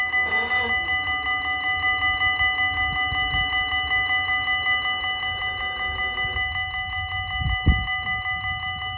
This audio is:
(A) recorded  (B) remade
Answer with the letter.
A